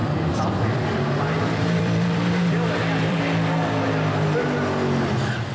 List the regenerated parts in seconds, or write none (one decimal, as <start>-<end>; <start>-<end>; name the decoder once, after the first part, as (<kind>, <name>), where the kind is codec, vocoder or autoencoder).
0.0-3.2 (vocoder, BigVGAN v2)

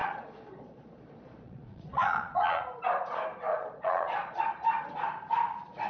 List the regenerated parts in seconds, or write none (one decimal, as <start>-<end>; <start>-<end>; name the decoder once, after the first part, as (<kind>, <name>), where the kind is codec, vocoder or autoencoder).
0.0-2.6 (vocoder, Vocos); 3.5-4.4

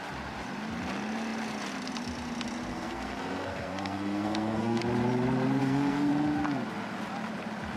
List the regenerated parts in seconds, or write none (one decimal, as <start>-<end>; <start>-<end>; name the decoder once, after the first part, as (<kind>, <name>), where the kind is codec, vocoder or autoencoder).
2.7-4.8 (codec, SNAC); 5.6-6.1

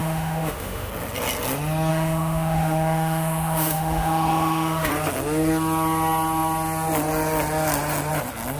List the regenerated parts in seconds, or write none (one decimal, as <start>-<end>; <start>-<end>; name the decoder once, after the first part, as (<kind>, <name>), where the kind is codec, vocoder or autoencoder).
0.0-0.9 (autoencoder, DAC-VAE); 1.9-4.9

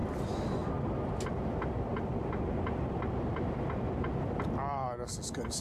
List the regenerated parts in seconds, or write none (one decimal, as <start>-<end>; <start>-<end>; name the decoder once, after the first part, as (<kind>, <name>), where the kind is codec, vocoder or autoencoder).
none

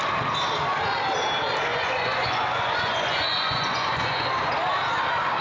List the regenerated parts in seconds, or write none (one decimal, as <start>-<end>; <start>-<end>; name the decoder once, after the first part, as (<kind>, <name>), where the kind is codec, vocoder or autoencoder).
1.7-4.3 (vocoder, Vocos)